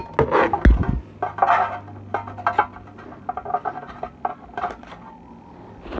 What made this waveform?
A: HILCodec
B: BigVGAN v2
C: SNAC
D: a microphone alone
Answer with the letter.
D